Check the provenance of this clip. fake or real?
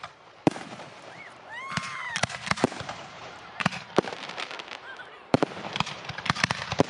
fake